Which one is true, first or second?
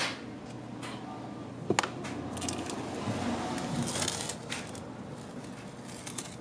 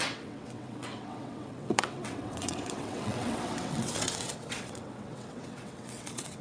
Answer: first